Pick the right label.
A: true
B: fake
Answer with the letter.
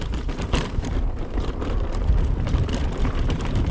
B